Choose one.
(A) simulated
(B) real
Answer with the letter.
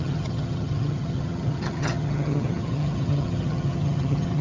A